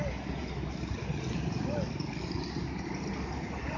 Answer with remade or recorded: recorded